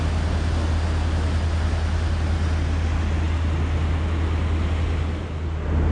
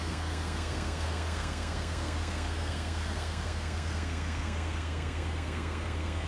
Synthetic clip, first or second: second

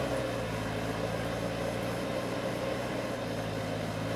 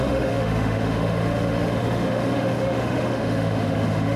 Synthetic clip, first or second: second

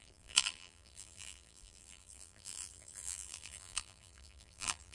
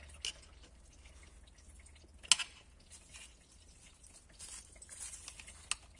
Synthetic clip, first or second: first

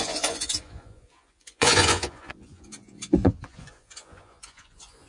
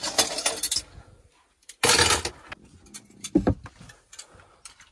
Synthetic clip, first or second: first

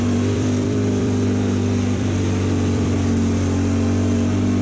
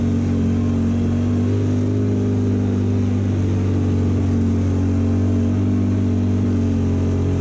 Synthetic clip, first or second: first